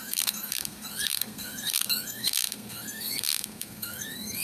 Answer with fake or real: fake